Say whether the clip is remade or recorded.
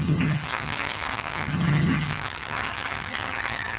remade